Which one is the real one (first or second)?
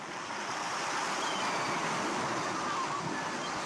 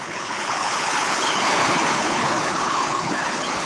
first